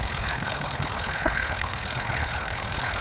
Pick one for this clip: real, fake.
fake